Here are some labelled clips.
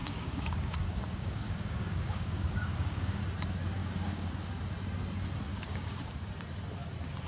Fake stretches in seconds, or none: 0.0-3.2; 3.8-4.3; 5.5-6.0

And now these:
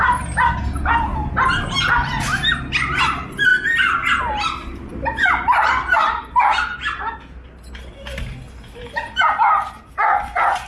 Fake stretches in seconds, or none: 1.1-2.5; 4.9-7.1